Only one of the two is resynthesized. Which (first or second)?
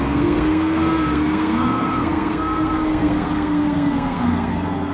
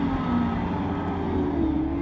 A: first